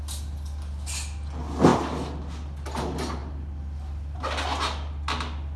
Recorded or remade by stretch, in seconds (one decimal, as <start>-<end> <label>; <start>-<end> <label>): 0.0-5.6 recorded